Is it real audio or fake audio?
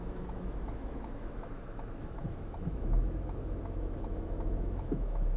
fake